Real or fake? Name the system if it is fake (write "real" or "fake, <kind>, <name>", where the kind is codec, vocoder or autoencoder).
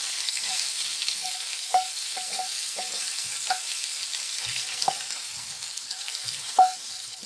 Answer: fake, codec, SNAC